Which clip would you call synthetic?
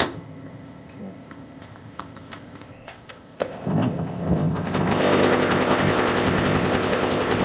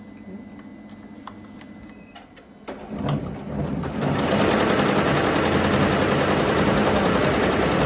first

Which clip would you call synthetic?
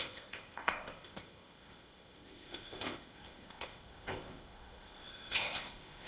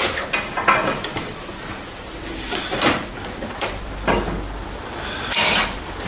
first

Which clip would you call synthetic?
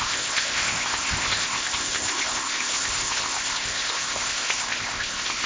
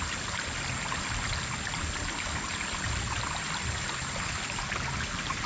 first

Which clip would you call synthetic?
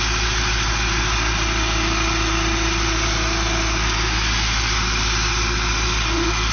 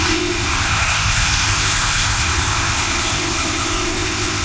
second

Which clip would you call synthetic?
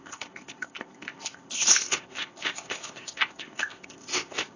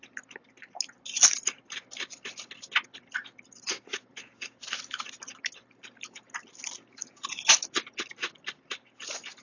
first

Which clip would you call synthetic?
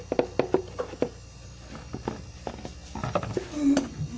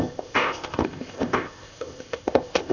second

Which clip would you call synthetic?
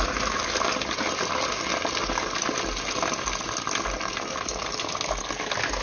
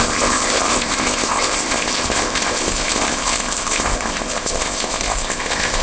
second